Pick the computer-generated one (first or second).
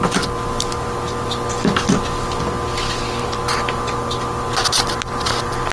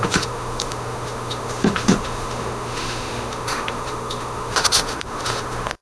second